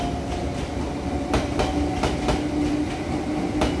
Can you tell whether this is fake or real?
real